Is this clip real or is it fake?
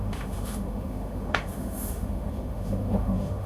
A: fake